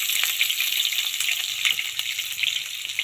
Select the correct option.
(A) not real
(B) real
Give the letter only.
B